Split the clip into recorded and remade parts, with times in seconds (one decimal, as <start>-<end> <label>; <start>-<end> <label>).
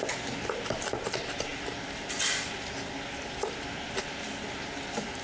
0.0-5.2 recorded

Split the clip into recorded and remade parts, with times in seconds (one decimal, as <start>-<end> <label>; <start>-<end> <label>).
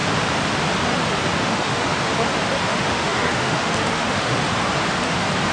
0.0-1.4 recorded; 1.4-1.9 remade; 1.9-2.7 recorded; 2.7-4.4 remade; 4.4-5.5 recorded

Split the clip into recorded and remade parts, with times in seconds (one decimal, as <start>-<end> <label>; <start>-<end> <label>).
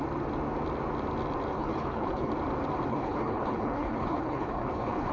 0.0-1.5 recorded; 1.5-2.3 remade; 2.3-2.9 recorded; 2.9-5.1 remade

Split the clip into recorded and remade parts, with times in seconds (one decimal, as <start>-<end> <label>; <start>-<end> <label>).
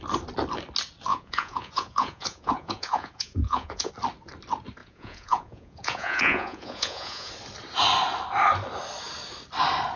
0.0-1.1 recorded; 1.1-3.9 remade; 3.9-4.8 recorded; 4.8-7.3 remade; 7.3-10.0 recorded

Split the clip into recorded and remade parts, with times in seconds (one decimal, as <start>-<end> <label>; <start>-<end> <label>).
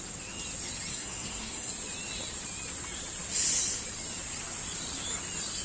0.0-0.9 recorded; 0.9-1.7 remade; 1.7-5.6 recorded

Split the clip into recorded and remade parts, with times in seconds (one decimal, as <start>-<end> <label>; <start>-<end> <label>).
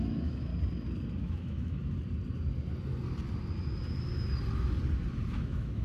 0.0-0.5 remade; 0.5-1.2 recorded; 1.2-1.8 remade; 1.8-5.3 recorded; 5.3-5.8 remade